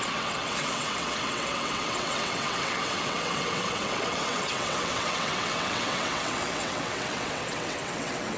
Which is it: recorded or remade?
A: remade